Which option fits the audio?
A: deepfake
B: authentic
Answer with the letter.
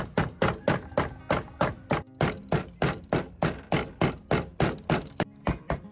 B